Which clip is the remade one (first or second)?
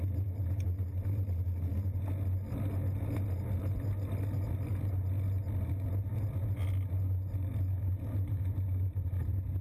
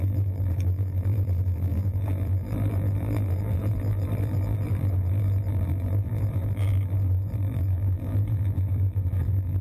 second